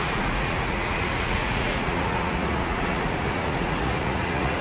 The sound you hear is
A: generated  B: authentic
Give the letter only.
A